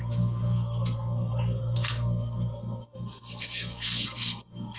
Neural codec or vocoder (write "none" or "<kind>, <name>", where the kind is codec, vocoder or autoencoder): codec, SNAC